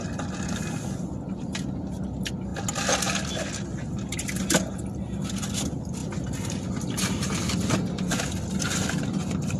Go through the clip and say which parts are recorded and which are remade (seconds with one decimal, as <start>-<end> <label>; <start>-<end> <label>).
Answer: 0.0-9.6 recorded